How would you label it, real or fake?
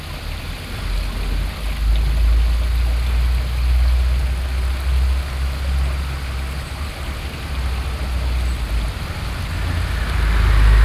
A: real